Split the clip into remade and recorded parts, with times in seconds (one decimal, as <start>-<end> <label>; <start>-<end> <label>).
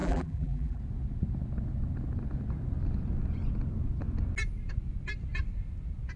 0.0-0.8 remade; 0.8-6.2 recorded